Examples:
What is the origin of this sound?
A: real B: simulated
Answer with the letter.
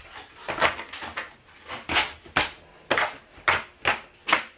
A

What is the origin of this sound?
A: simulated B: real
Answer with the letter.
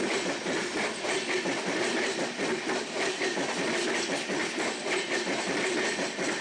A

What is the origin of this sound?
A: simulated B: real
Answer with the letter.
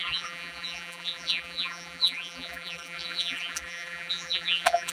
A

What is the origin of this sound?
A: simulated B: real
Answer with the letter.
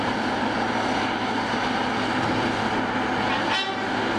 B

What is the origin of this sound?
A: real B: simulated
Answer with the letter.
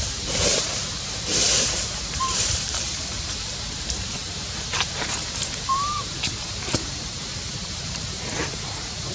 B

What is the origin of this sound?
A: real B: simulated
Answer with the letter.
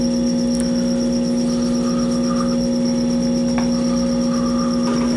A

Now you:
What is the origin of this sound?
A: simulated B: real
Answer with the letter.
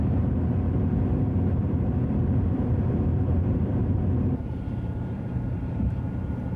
A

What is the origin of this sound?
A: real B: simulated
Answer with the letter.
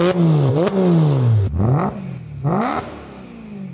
A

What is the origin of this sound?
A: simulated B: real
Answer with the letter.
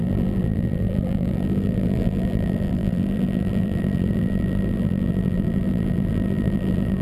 A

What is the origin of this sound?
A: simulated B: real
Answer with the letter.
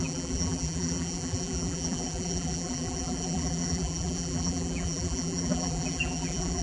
A